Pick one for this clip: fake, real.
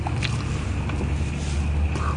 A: real